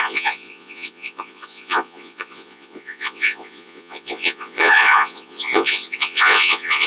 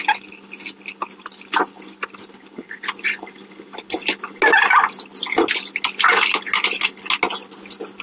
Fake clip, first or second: first